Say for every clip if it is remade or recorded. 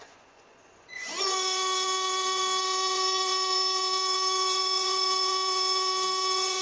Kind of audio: remade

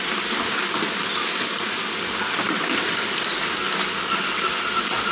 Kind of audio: recorded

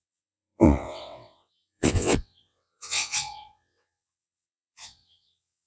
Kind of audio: remade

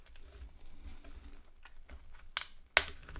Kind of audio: recorded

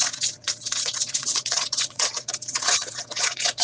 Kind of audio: remade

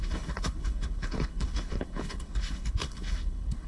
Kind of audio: remade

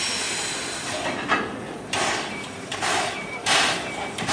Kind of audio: remade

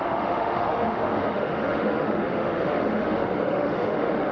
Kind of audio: remade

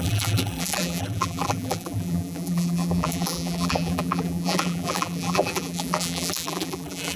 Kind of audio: remade